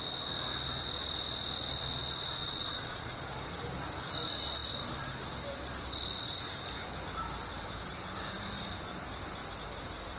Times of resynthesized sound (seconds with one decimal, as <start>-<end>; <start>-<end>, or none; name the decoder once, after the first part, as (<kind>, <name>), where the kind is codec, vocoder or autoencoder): 2.4-3.2 (vocoder, Vocos)